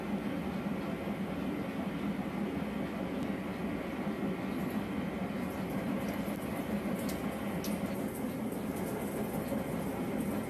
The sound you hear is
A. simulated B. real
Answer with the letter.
B